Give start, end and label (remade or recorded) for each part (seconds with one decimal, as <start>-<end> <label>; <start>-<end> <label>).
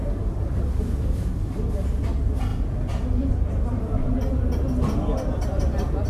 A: 0.0-6.1 recorded